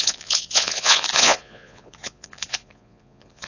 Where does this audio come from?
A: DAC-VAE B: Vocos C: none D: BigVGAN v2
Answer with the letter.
B